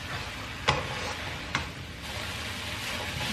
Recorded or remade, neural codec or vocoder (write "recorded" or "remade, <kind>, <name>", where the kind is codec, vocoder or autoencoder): recorded